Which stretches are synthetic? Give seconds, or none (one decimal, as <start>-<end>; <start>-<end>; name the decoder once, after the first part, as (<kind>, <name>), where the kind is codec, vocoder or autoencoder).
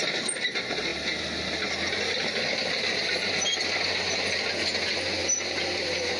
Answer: none